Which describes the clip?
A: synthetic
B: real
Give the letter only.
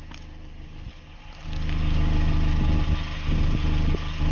B